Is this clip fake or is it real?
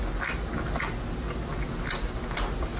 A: real